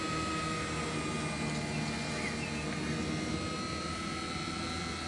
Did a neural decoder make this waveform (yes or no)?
no